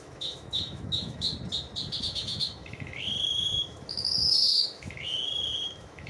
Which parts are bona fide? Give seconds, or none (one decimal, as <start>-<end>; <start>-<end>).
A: 1.3-2.0